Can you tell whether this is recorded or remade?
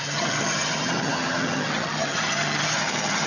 remade